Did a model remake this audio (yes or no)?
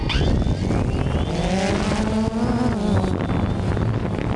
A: no